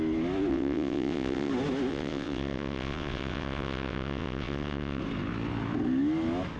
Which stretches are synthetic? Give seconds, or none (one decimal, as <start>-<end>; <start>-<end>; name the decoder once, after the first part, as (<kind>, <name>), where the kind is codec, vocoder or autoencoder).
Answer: 0.5-1.5 (vocoder, WaveNeXt); 1.9-5.0